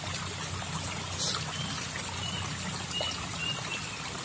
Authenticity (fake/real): real